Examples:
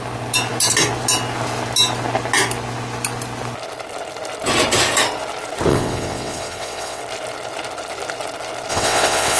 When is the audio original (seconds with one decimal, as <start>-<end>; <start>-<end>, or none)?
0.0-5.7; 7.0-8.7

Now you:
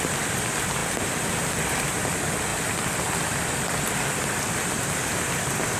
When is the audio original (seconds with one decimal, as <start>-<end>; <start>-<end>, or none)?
0.0-5.8

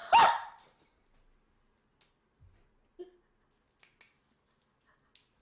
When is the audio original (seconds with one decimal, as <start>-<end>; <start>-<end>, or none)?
0.0-5.4